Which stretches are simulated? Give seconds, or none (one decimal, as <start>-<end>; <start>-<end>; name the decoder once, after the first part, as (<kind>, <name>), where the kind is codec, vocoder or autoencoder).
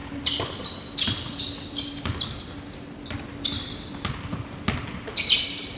none